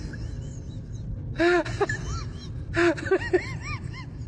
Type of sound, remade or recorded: recorded